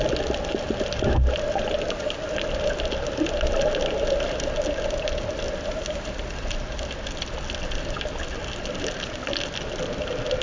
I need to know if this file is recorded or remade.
recorded